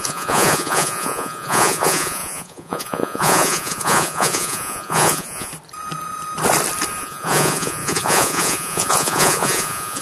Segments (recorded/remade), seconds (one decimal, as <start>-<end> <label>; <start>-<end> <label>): 0.0-5.5 remade; 5.5-7.0 recorded; 7.0-10.0 remade